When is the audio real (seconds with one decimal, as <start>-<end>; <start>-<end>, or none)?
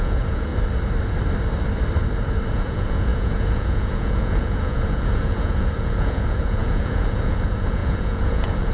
0.5-2.5